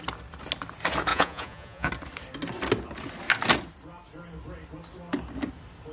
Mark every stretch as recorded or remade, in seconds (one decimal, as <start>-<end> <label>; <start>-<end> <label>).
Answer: 0.0-1.1 recorded; 1.1-1.9 remade; 1.9-5.9 recorded